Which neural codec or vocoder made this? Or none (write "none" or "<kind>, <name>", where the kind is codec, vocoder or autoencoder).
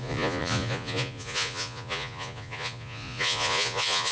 vocoder, Vocos